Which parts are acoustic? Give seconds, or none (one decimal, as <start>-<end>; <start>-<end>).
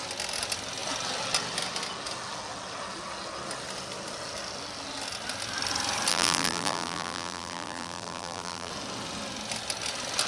0.0-6.1; 8.7-10.3